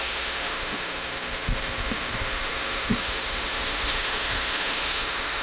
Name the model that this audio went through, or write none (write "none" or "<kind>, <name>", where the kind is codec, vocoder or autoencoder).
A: autoencoder, DAC-VAE